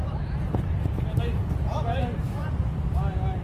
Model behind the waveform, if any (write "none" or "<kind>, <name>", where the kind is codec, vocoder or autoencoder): none